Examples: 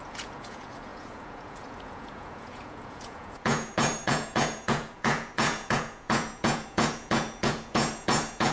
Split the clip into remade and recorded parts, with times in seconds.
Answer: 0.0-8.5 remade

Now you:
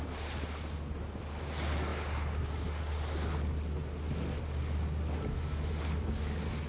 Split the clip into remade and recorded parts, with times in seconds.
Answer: 0.0-6.7 recorded

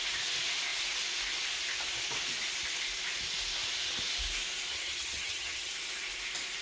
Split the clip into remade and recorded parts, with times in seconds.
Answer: 0.0-4.7 recorded; 4.7-5.7 remade; 5.7-6.6 recorded

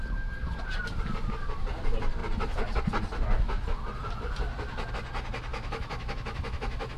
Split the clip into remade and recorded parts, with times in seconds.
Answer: 0.0-5.5 recorded; 5.5-7.0 remade

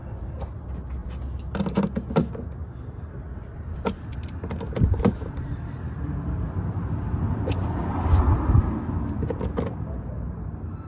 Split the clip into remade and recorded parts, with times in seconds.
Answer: 0.0-10.9 recorded